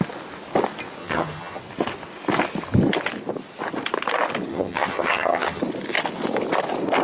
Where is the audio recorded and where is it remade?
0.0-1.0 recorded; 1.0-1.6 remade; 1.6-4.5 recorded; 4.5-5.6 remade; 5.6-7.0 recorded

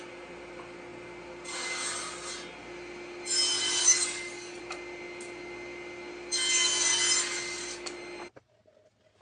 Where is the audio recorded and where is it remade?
0.0-3.8 recorded; 3.8-4.6 remade; 4.6-9.2 recorded

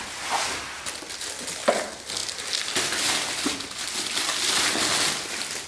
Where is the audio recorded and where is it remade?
0.0-5.7 recorded

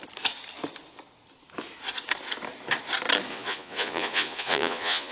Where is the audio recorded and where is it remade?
0.0-3.3 recorded; 3.3-5.1 remade